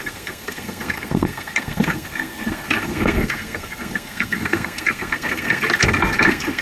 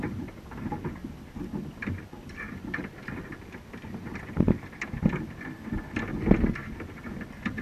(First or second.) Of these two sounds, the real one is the second